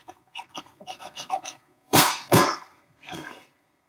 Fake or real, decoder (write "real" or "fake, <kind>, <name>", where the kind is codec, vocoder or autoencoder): fake, codec, SNAC